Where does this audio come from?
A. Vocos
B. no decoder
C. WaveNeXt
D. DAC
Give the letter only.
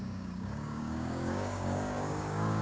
D